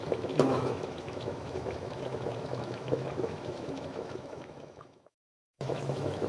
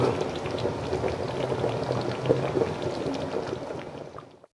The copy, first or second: first